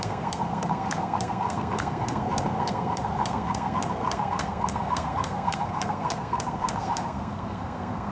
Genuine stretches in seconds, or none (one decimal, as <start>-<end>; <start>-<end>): none